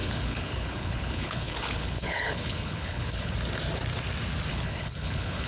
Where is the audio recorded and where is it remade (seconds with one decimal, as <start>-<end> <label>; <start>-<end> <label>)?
0.0-3.3 remade; 3.3-4.5 recorded; 4.5-5.5 remade